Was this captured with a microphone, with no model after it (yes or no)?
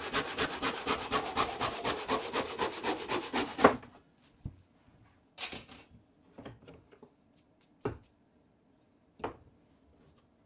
yes